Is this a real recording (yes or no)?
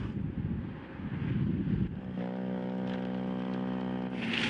yes